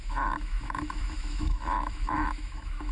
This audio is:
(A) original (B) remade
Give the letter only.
B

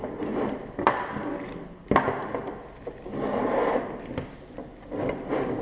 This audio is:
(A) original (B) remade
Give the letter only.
A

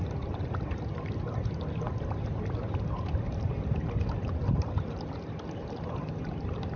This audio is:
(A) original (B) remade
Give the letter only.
A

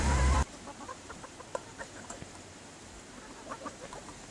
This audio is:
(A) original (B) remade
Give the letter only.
B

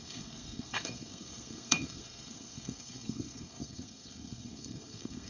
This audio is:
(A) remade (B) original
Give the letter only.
A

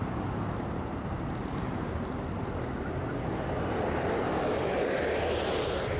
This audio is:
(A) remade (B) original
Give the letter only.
A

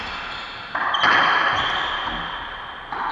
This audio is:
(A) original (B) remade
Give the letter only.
A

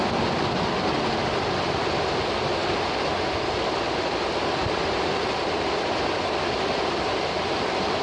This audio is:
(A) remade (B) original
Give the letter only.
B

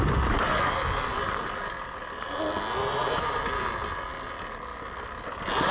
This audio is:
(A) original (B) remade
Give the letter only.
A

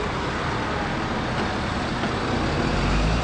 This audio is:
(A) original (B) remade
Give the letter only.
A